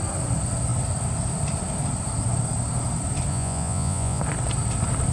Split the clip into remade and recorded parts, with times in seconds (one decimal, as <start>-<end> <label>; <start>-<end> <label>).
0.0-3.3 recorded; 3.3-4.2 remade; 4.2-5.1 recorded